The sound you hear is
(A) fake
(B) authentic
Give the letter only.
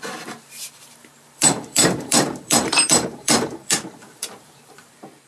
A